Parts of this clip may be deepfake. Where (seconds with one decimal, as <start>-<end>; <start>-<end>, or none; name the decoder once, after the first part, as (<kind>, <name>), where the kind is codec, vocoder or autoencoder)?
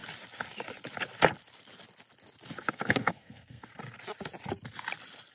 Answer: 2.7-3.7 (codec, SNAC)